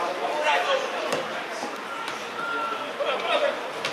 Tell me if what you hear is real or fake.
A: fake